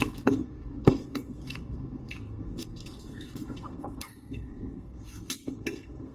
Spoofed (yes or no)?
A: yes